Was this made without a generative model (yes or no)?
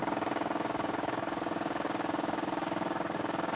no